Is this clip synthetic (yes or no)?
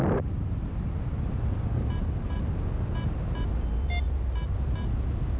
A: no